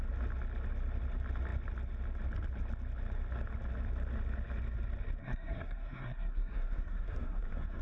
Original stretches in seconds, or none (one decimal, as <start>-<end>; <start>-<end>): 0.0-5.2